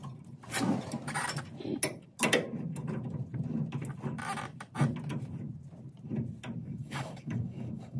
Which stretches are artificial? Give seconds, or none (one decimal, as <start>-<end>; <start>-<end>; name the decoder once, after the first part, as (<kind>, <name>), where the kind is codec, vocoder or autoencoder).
6.6-8.0 (codec, DAC)